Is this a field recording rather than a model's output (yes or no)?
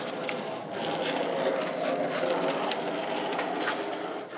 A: yes